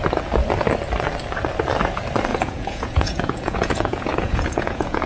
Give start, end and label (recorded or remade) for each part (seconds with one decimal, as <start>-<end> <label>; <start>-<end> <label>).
0.0-2.3 recorded; 2.3-5.1 remade